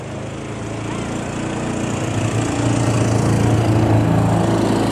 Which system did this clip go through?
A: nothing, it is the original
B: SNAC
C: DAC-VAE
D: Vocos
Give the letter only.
A